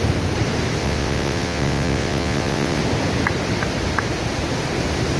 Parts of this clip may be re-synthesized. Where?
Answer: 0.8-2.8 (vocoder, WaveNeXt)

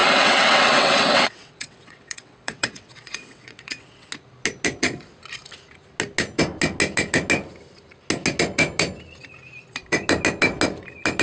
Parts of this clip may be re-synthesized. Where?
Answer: 0.0-4.1 (vocoder, WaveNeXt)

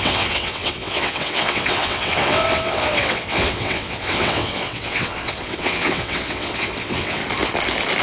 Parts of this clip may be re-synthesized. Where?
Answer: 0.0-7.2 (vocoder, WaveNeXt)